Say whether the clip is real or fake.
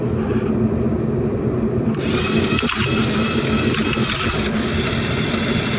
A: real